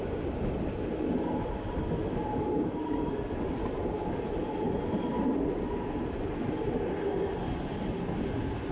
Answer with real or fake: real